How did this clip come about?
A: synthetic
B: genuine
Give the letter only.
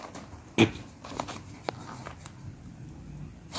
B